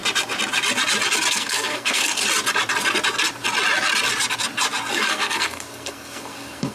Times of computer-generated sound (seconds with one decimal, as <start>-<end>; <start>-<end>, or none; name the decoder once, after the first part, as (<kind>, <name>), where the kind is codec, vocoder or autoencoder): 1.3-2.2 (codec, SNAC); 4.9-6.7